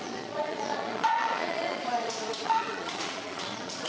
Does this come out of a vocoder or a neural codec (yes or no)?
yes